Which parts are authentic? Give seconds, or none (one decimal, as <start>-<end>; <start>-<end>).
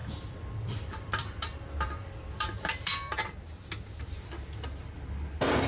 2.9-4.0